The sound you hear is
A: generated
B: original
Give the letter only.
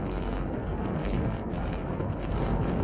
A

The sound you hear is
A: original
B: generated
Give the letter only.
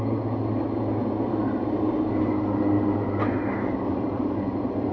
A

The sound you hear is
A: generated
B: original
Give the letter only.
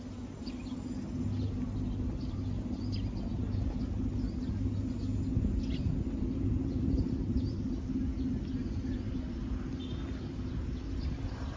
B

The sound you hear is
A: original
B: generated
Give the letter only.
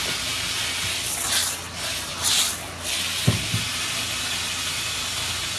A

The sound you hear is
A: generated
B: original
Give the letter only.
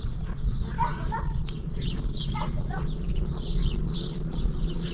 A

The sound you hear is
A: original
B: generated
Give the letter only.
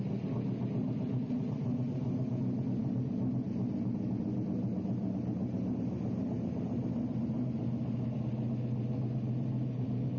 A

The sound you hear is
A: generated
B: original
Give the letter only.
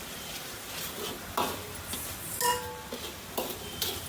B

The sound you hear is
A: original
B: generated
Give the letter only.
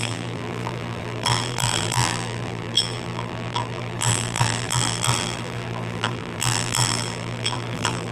B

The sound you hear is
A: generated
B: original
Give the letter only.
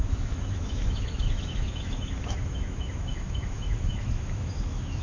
A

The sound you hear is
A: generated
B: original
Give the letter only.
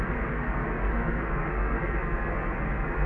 A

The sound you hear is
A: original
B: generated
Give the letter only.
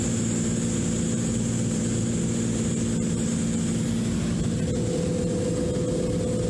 A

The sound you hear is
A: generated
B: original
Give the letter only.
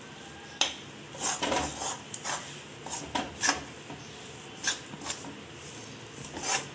B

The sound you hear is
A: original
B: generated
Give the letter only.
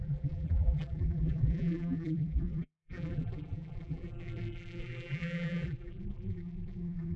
B